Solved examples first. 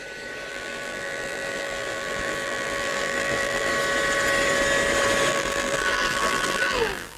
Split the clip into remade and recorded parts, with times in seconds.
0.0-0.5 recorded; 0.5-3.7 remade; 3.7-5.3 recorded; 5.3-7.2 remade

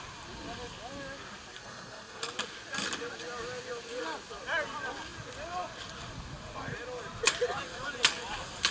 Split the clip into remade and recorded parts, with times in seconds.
0.0-1.6 recorded; 1.6-2.2 remade; 2.2-8.7 recorded

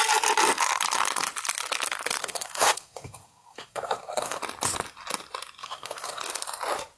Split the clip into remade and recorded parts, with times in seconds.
0.0-2.2 recorded; 2.2-4.4 remade; 4.4-5.6 recorded; 5.6-6.2 remade; 6.2-7.0 recorded

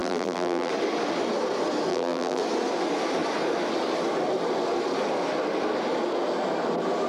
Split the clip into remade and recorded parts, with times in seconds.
0.0-0.7 remade; 0.7-1.9 recorded; 1.9-2.4 remade; 2.4-7.1 recorded

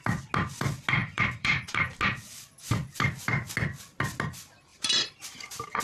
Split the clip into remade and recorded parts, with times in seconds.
0.0-1.0 recorded; 1.0-1.8 remade; 1.8-4.7 recorded; 4.7-5.8 remade